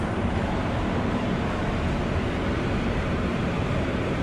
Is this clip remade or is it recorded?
remade